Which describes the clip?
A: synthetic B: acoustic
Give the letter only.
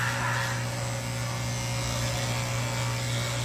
B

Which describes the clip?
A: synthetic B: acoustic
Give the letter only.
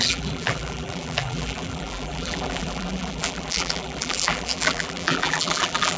A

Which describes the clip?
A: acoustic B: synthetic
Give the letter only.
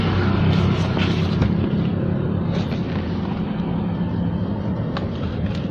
A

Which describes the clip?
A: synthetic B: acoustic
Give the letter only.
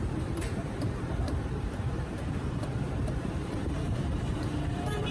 A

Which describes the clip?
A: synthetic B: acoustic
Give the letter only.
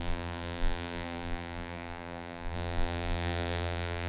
A